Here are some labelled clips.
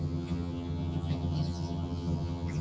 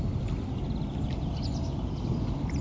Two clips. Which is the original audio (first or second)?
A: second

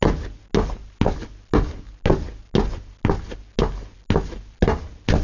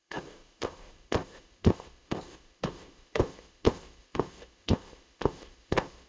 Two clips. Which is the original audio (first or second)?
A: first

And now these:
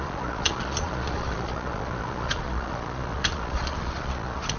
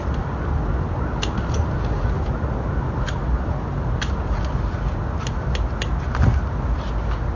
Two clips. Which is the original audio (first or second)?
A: second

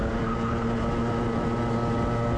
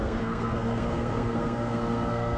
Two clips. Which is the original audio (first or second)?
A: first